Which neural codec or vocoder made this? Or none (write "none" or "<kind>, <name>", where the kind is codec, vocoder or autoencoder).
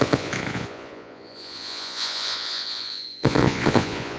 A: vocoder, Vocos